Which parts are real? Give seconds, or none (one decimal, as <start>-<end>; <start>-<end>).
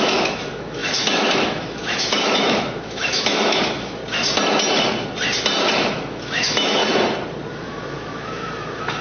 4.0-5.6; 6.8-7.5